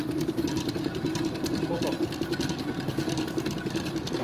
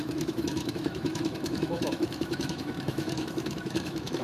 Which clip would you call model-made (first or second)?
second